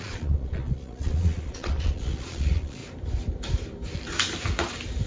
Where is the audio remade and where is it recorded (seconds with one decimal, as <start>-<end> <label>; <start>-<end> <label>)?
0.0-2.8 remade; 2.8-5.1 recorded